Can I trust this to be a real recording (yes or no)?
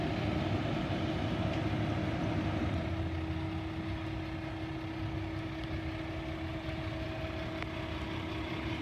yes